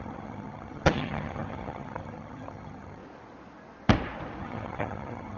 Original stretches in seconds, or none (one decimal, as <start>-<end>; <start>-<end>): 3.0-4.4